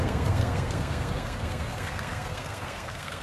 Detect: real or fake fake